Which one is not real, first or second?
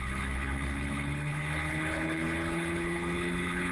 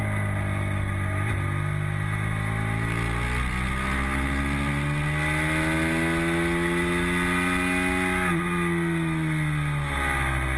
first